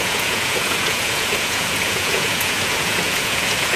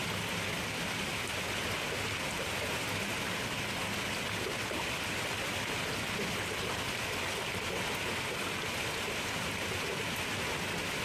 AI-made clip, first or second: first